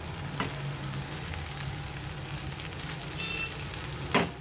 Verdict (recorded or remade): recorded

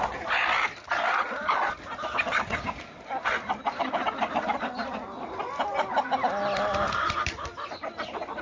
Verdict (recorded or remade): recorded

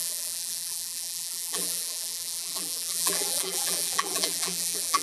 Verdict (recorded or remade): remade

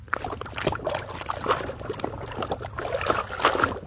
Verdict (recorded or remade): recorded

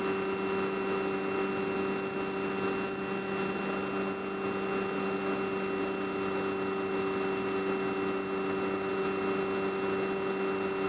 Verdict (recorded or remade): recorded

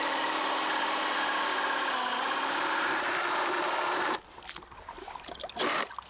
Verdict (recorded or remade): recorded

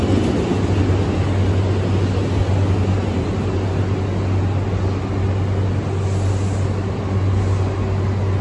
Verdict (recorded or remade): recorded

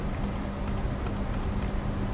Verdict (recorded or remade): recorded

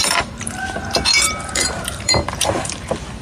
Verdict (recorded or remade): remade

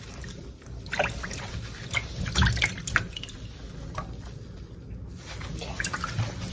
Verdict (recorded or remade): recorded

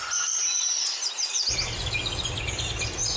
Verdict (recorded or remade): recorded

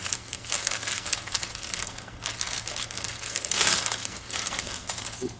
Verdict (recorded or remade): remade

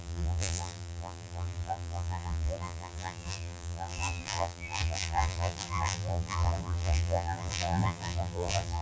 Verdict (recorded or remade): remade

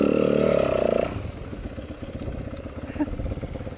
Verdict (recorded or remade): recorded